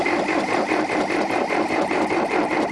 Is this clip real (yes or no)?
yes